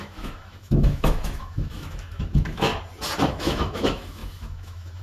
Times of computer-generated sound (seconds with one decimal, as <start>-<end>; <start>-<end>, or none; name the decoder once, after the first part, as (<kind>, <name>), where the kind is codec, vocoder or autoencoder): 0.0-2.7 (autoencoder, DAC-VAE); 3.3-5.0